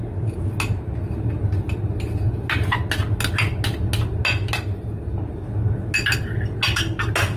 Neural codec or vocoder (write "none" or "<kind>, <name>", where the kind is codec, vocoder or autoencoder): none